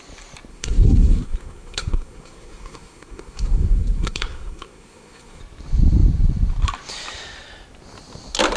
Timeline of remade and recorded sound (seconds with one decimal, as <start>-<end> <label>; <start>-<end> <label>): 0.0-0.5 recorded; 0.5-5.4 remade; 5.4-8.6 recorded